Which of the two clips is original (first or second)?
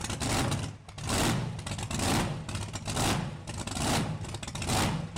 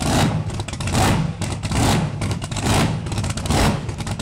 first